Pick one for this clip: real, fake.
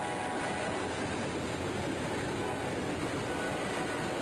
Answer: real